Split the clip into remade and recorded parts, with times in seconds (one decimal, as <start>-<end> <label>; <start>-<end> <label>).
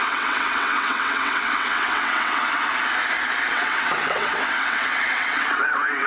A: 0.0-2.7 remade; 2.7-3.5 recorded; 3.5-6.1 remade